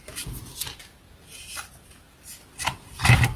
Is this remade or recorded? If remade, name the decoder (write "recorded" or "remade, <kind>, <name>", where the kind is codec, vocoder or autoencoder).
recorded